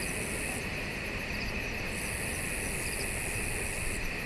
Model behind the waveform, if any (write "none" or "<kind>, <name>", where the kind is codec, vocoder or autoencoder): none